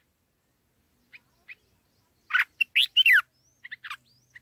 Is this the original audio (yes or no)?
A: yes